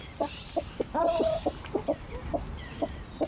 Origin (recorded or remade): remade